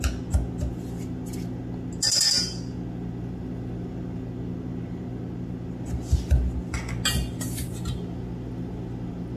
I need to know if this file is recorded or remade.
recorded